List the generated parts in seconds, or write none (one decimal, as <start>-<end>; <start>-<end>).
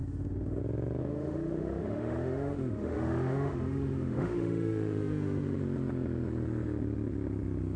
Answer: 0.0-0.6; 1.0-5.6